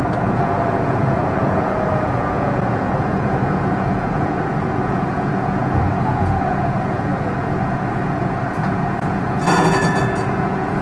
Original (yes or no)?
no